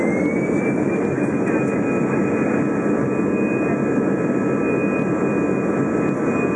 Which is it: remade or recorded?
recorded